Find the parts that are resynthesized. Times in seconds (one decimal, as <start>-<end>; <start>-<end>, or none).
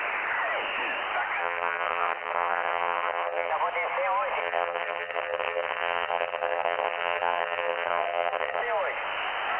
1.4-3.5; 4.4-8.6